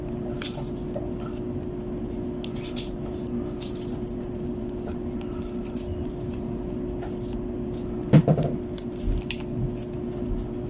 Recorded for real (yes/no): yes